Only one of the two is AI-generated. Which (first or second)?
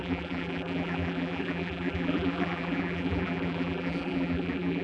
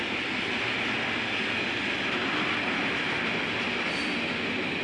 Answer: first